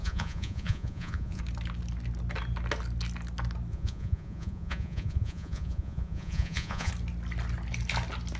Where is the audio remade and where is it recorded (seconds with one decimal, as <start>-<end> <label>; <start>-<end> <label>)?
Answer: 0.0-1.4 remade; 1.4-3.7 recorded; 3.7-6.9 remade; 6.9-8.4 recorded